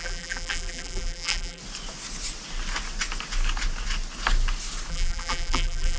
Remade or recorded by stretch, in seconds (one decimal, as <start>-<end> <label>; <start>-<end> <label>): 0.0-1.6 remade; 1.6-4.9 recorded; 4.9-6.0 remade